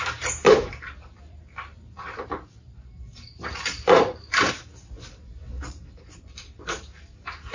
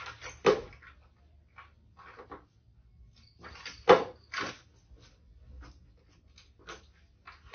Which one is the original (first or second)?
second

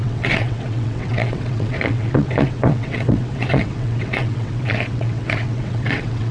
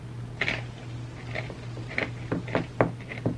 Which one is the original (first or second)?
second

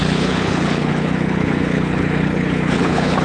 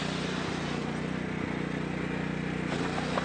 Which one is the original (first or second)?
second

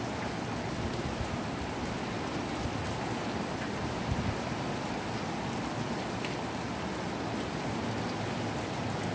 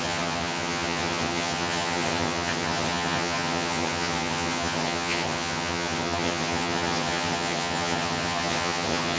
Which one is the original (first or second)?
first